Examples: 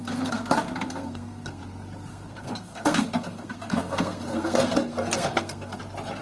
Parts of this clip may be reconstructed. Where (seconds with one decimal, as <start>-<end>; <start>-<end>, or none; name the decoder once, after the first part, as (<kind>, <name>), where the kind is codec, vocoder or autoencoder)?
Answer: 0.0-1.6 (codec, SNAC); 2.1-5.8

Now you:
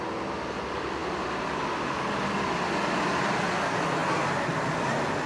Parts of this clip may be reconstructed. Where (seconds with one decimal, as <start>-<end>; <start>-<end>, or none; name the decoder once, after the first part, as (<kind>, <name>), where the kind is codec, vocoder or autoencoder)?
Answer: none

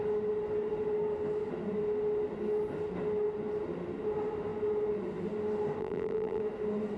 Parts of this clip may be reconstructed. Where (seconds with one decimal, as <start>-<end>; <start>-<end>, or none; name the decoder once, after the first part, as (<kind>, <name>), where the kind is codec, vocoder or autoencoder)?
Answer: 5.8-6.4 (vocoder, BigVGAN v2)